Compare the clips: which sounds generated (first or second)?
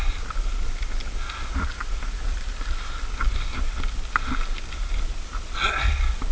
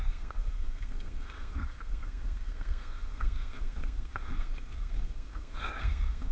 second